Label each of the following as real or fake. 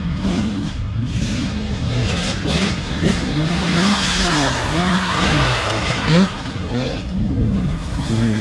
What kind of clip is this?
fake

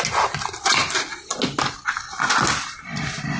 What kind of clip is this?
real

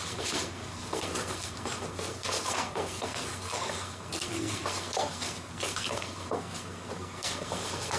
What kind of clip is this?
fake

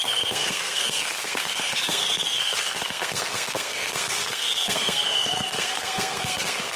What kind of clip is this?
fake